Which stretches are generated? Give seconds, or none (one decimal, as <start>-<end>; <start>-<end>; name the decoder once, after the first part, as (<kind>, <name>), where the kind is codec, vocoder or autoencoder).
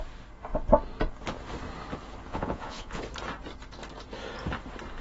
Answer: 2.3-3.0 (vocoder, Vocos)